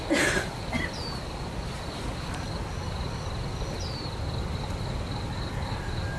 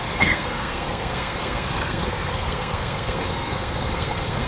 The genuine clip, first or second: first